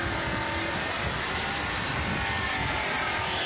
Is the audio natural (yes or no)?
yes